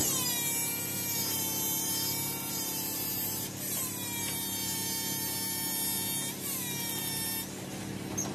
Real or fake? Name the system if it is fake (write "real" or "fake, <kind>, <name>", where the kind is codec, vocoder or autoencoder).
real